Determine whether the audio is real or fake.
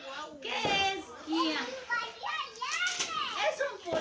real